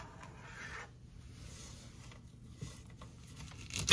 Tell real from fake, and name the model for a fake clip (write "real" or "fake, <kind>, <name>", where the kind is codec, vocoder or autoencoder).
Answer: real